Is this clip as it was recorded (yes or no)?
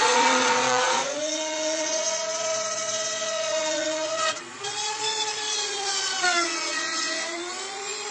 no